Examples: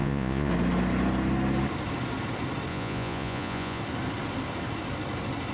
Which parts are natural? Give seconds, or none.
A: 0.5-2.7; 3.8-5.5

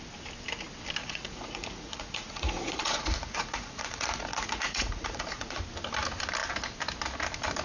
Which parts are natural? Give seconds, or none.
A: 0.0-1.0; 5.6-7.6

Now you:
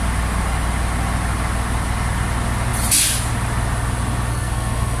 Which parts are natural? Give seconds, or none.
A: 0.0-4.3

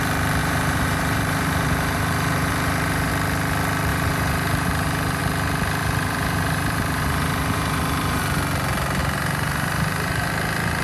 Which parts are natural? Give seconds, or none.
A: 0.0-0.4; 3.1-3.9; 5.2-5.8; 8.2-9.0; 10.3-10.8